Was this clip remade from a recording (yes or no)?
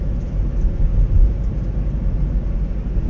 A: no